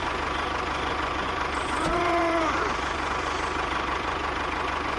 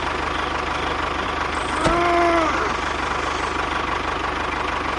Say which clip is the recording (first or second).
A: second